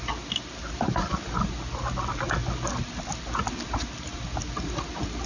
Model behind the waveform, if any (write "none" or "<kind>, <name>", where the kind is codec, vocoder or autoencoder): none